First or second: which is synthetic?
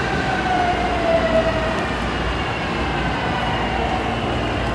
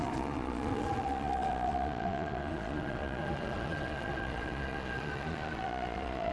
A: second